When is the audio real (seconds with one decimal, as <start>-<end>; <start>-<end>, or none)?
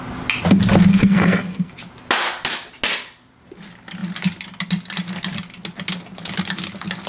0.0-0.9; 1.7-7.1